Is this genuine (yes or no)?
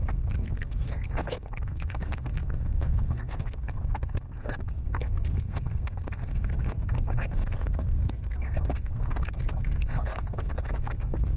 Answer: no